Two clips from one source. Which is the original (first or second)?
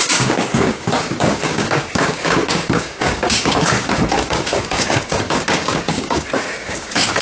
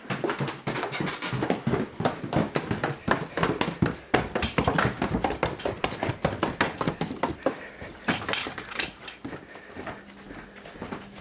second